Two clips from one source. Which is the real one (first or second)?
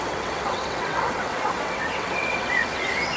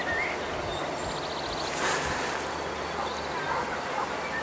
second